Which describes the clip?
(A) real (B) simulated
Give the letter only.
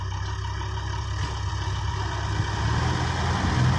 A